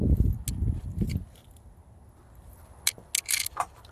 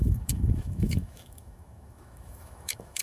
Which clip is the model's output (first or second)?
second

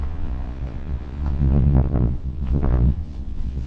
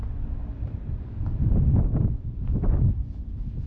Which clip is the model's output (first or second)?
first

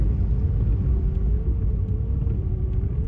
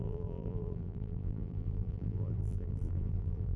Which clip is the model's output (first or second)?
second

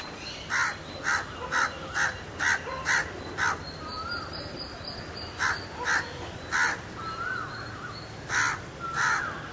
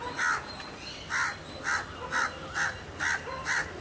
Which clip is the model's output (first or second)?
first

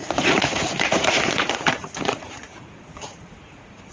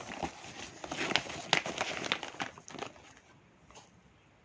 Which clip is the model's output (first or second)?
first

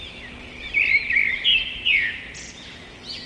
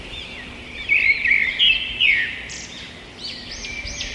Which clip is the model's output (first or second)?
second